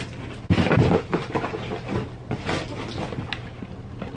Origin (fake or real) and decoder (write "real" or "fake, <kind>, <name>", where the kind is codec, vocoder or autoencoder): real